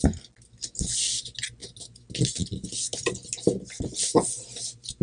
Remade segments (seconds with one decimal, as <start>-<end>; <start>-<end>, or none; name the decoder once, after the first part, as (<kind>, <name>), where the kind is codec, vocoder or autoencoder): none